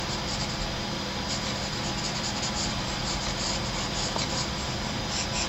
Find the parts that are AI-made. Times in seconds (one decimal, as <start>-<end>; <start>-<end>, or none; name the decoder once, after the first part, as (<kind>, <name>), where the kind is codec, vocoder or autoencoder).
none